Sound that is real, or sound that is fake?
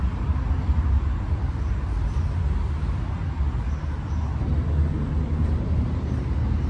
real